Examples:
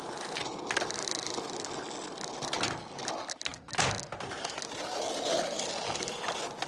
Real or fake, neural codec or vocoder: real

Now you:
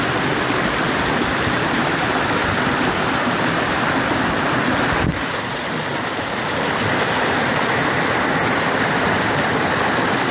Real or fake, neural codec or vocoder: real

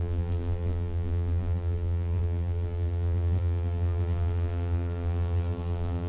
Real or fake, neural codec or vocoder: fake, vocoder, BigVGAN v2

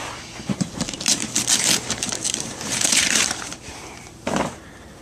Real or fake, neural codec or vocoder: fake, vocoder, BigVGAN v2